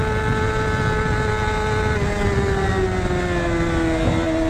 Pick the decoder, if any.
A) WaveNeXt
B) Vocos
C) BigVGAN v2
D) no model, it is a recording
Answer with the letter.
D